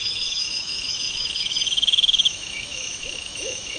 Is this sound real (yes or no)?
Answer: no